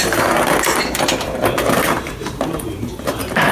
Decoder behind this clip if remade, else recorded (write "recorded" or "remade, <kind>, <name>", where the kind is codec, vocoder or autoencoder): remade, vocoder, BigVGAN v2